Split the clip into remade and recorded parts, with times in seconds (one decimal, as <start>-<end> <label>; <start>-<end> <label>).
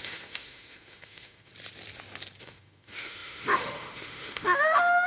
0.0-1.5 remade; 1.5-2.4 recorded; 2.4-5.1 remade